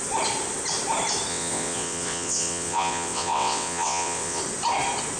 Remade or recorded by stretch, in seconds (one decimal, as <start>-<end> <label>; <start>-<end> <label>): 0.0-1.3 recorded; 1.3-4.4 remade; 4.4-5.2 recorded